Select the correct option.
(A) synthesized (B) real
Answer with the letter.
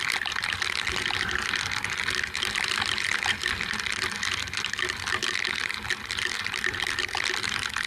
B